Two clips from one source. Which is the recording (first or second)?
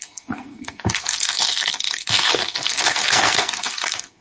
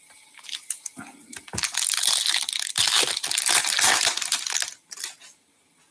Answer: second